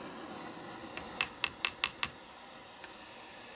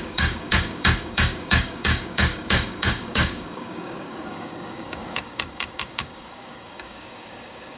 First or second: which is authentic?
first